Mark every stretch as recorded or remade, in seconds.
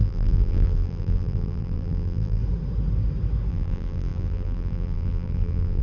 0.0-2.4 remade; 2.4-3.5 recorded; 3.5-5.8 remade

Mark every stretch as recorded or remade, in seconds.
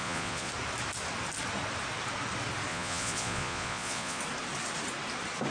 0.0-0.5 remade; 0.5-2.7 recorded; 2.7-4.2 remade; 4.2-5.5 recorded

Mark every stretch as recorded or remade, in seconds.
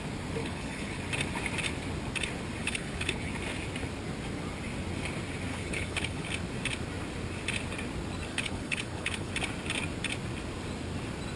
0.0-0.4 recorded; 0.4-1.0 remade; 1.0-2.6 recorded; 2.6-3.3 remade; 3.3-5.5 recorded; 5.5-6.3 remade; 6.3-8.3 recorded; 8.3-9.3 remade; 9.3-11.4 recorded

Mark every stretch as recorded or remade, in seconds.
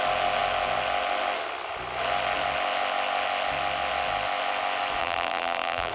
0.0-5.0 recorded; 5.0-5.9 remade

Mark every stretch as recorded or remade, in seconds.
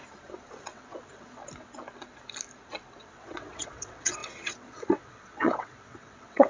0.0-0.5 recorded; 0.5-1.4 remade; 1.4-3.0 recorded; 3.0-6.5 remade